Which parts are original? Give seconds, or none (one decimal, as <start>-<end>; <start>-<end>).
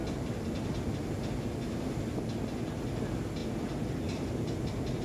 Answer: 0.0-5.0